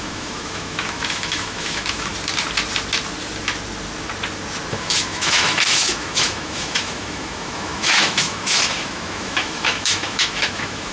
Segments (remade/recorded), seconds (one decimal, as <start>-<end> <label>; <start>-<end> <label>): 0.0-2.1 remade; 2.1-4.7 recorded; 4.7-10.9 remade